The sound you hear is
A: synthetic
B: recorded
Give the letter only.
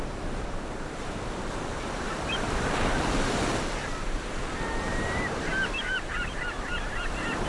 A